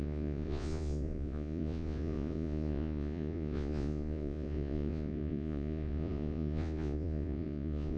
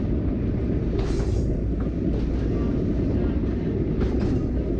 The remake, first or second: first